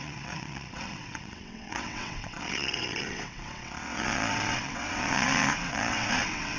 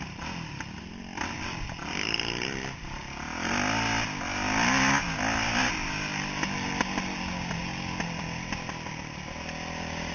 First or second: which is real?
second